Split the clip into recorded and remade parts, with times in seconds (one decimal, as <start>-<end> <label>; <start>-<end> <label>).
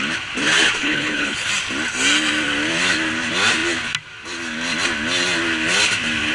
0.0-0.8 recorded; 0.8-1.5 remade; 1.5-6.3 recorded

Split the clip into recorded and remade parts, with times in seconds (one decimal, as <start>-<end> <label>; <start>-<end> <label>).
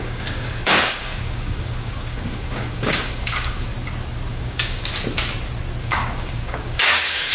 0.0-3.7 remade; 3.7-4.3 recorded; 4.3-4.9 remade; 4.9-5.8 recorded; 5.8-7.3 remade